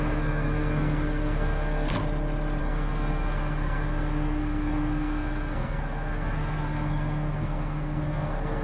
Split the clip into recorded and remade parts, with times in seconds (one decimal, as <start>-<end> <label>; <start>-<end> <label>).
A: 0.0-2.0 remade; 2.0-2.6 recorded; 2.6-8.6 remade